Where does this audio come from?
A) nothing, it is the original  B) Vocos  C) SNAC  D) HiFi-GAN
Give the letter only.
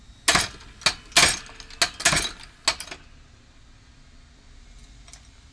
A